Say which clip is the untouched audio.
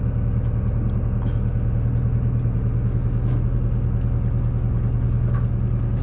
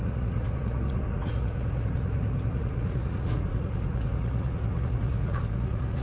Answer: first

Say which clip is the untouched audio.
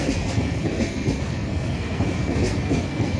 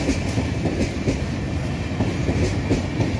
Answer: second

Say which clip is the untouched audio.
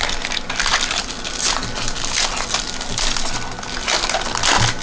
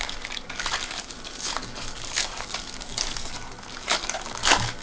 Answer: first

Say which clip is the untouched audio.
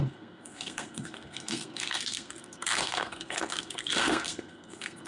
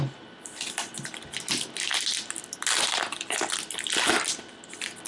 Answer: second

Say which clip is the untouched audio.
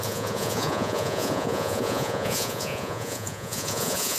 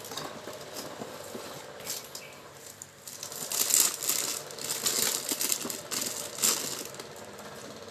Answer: second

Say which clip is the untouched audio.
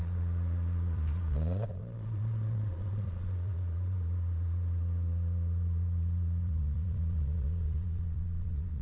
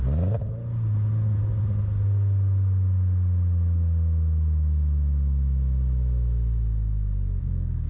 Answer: second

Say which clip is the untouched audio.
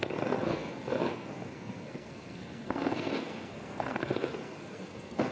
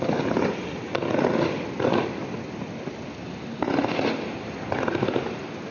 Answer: second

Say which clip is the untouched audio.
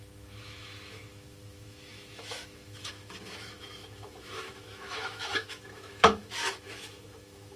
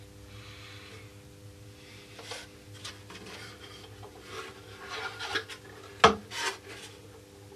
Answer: second